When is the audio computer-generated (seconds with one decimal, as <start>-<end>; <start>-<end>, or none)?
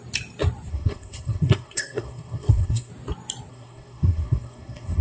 0.7-2.9; 3.5-5.0